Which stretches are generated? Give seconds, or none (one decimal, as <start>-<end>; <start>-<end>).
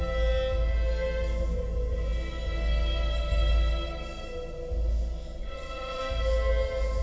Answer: 5.4-6.0